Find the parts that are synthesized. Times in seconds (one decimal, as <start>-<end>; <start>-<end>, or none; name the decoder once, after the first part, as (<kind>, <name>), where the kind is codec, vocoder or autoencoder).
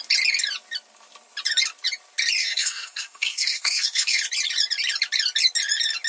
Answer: 2.4-4.2 (codec, SNAC)